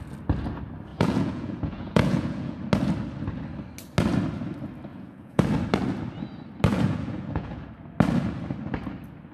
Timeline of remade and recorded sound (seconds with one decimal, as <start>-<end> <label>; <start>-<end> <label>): 0.0-0.9 recorded; 0.9-2.6 remade; 2.6-4.9 recorded; 4.9-5.4 remade; 5.4-6.7 recorded; 6.7-7.7 remade; 7.7-9.3 recorded